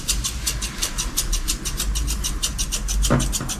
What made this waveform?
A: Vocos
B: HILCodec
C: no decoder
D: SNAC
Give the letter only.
C